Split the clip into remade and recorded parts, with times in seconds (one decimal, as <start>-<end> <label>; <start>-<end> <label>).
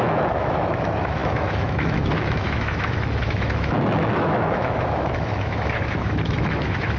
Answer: 0.0-7.0 remade